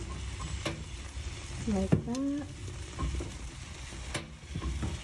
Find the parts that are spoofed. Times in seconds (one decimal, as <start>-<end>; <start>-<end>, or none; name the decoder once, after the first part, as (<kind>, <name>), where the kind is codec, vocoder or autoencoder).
2.6-3.7 (vocoder, BigVGAN v2)

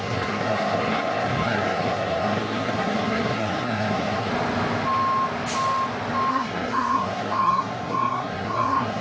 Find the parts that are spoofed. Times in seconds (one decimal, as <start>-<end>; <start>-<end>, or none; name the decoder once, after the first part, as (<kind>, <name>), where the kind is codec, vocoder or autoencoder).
0.0-4.3 (codec, SNAC); 6.3-9.0

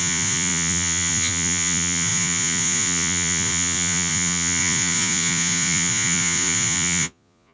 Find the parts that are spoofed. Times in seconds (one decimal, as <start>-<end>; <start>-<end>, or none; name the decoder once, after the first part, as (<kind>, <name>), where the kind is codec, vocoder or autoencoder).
0.0-7.5 (vocoder, Vocos)